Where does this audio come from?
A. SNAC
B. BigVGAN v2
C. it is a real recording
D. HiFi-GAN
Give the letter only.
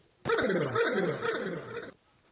C